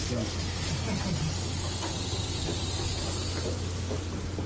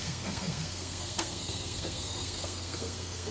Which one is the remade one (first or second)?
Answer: second